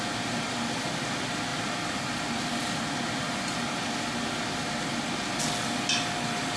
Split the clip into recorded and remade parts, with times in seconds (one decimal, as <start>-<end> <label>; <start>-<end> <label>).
0.0-6.6 recorded